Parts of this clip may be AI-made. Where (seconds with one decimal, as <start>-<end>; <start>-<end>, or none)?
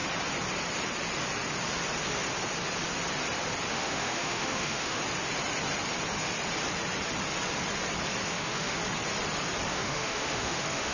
3.7-5.0; 8.3-8.8; 9.7-10.9